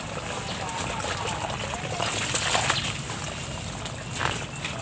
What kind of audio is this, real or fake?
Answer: real